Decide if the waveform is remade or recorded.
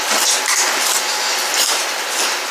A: recorded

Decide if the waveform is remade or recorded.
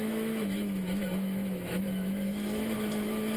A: remade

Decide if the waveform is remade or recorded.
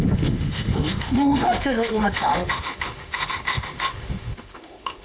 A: remade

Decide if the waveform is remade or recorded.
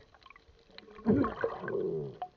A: recorded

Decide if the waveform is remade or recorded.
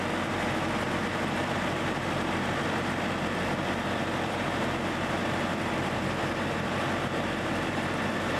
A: recorded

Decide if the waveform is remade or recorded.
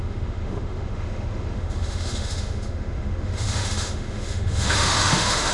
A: remade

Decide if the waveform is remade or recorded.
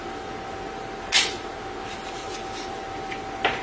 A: recorded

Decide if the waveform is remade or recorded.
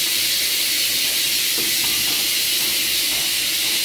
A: recorded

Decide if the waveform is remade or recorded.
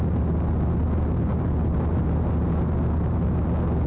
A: recorded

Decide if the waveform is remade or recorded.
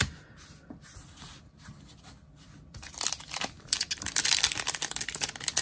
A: recorded